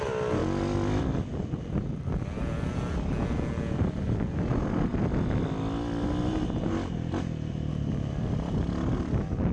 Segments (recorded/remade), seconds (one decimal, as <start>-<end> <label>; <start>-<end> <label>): 0.0-9.5 recorded